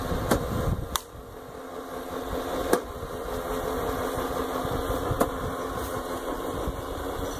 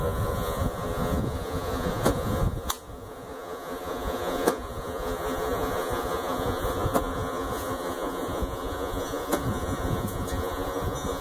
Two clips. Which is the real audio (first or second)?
first